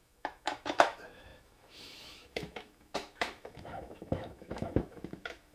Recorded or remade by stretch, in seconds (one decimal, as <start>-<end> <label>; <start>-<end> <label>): 0.0-5.5 remade